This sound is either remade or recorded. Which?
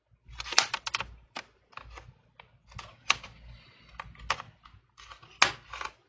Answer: recorded